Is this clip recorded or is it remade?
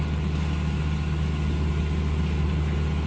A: recorded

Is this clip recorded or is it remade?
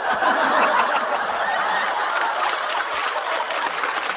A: recorded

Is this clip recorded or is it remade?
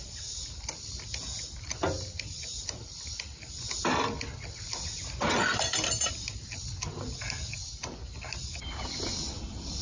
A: recorded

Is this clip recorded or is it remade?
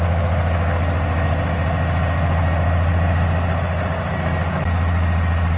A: recorded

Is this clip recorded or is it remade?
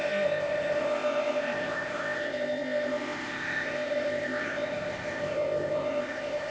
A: remade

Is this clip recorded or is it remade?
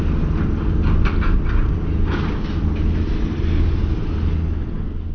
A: recorded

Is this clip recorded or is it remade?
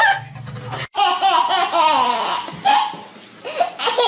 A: recorded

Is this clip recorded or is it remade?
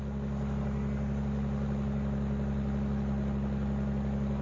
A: recorded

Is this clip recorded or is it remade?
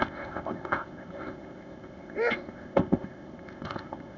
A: remade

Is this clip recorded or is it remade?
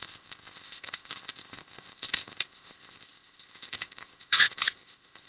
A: remade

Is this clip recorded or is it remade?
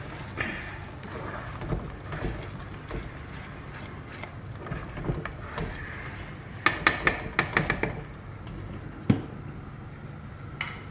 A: recorded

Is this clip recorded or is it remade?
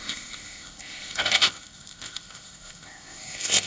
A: remade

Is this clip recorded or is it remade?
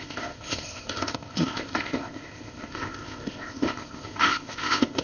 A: remade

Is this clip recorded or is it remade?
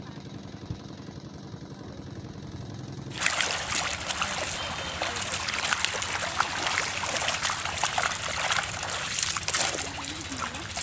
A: recorded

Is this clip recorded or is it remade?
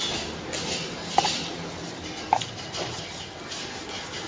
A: recorded